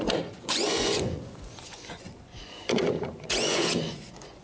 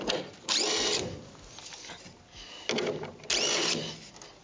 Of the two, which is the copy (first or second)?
first